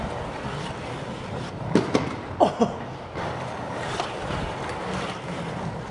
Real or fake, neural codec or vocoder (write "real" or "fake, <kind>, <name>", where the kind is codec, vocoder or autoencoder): real